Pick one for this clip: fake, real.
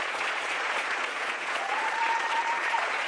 fake